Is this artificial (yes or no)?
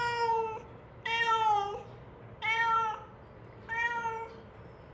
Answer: yes